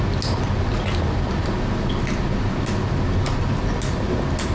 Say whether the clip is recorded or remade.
recorded